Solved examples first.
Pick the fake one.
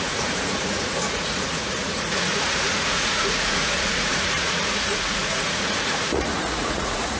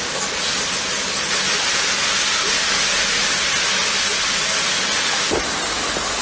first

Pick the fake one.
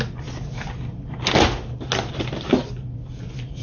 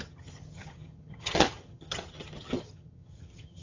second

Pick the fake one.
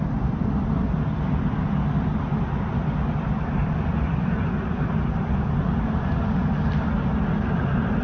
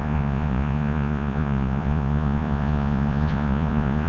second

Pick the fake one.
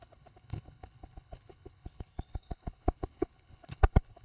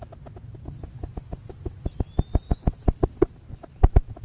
first